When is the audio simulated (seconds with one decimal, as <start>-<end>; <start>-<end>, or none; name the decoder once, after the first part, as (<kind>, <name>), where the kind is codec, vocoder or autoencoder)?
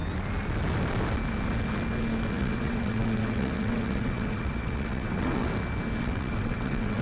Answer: 2.3-5.5 (vocoder, WaveNeXt); 6.0-7.0